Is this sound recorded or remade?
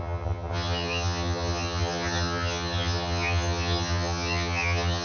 remade